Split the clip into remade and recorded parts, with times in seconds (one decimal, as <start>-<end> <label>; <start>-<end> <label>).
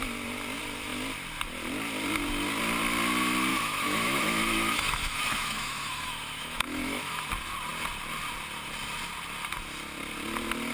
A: 0.0-3.5 recorded; 3.5-7.3 remade; 7.3-10.7 recorded